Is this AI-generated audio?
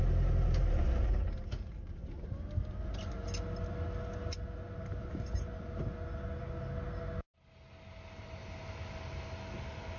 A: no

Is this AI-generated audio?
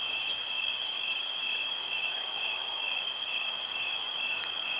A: yes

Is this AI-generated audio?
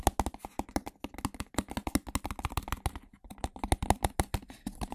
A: no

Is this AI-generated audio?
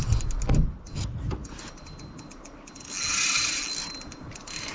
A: no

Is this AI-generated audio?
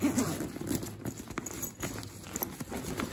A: no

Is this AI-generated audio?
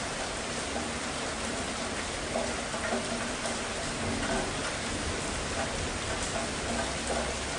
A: no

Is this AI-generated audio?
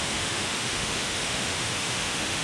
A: yes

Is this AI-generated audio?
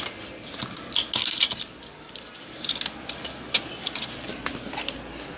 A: no